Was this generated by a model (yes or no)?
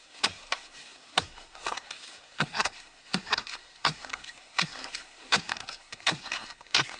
yes